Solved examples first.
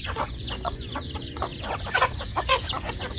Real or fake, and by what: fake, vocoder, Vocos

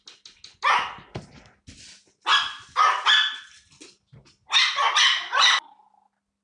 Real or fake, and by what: real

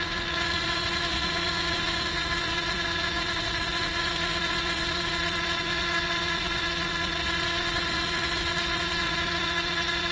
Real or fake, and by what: fake, vocoder, Vocos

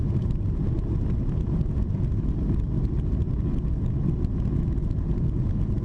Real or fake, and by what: real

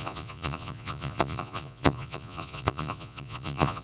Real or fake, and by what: fake, vocoder, Vocos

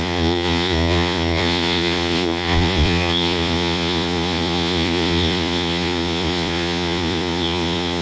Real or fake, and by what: fake, vocoder, Vocos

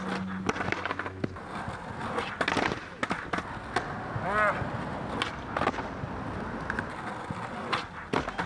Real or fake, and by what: real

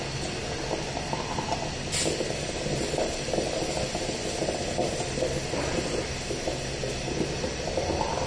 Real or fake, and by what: real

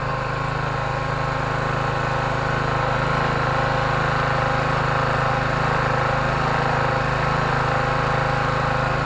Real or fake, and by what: real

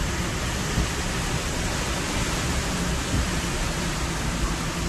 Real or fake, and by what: real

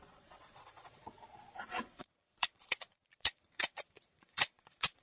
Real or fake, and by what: fake, vocoder, Vocos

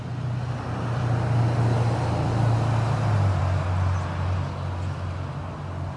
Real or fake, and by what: real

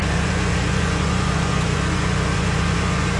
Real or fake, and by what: fake, vocoder, Vocos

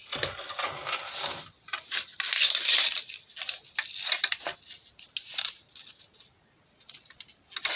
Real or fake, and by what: real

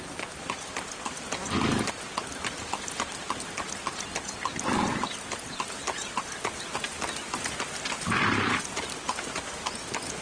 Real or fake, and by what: real